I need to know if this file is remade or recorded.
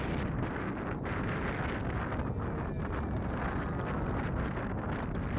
recorded